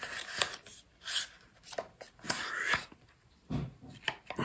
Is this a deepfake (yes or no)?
no